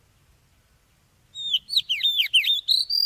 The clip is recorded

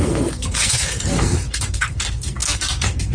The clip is remade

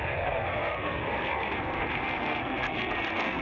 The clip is remade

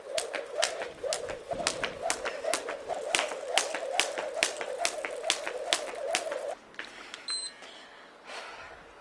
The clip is recorded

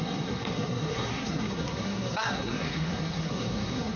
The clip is remade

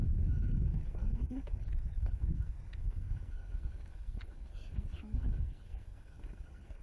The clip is remade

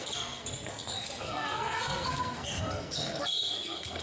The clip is remade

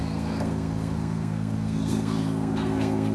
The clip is remade